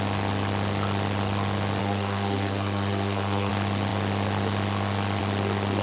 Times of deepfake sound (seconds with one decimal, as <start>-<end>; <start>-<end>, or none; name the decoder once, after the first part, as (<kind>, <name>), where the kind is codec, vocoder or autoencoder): 1.8-3.5 (codec, SNAC)